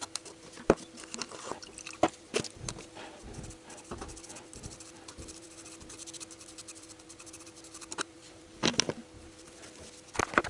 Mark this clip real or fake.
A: fake